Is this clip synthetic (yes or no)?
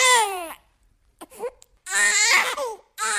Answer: yes